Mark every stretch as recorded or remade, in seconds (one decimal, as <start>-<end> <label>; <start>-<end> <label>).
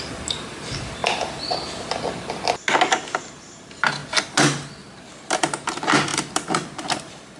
0.0-7.4 recorded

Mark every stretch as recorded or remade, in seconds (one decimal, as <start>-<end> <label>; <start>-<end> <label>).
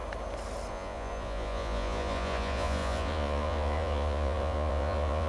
0.0-0.7 recorded; 0.7-5.3 remade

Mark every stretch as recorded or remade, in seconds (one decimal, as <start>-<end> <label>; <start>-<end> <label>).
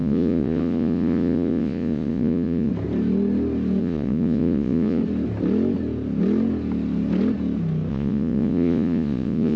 0.0-2.7 remade; 2.7-3.8 recorded; 3.8-5.0 remade; 5.0-7.9 recorded; 7.9-9.6 remade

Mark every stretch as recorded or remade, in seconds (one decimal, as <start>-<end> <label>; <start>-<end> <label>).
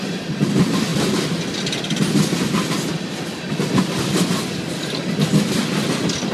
0.0-6.3 recorded